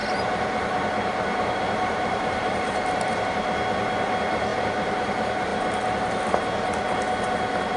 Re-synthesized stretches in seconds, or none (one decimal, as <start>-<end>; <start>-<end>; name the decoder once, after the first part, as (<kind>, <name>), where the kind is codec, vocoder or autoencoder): 0.0-3.3 (vocoder, BigVGAN v2); 4.5-5.1